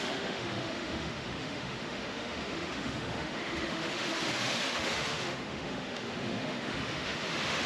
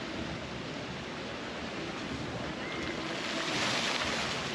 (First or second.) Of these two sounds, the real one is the second